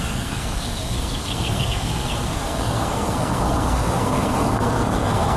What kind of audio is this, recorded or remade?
remade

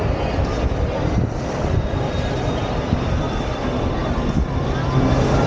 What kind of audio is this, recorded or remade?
remade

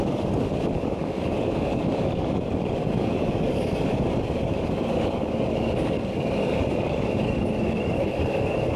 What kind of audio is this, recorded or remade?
remade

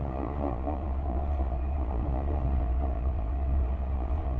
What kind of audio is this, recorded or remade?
remade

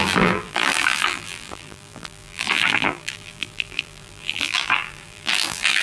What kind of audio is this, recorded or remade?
remade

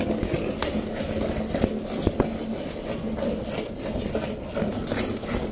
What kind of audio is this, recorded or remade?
recorded